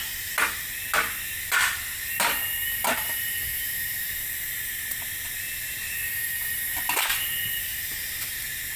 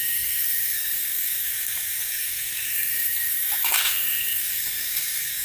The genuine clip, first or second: first